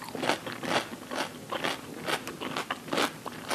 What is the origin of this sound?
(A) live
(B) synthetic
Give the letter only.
A